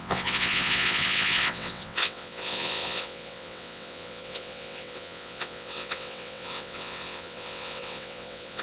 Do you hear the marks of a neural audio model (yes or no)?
yes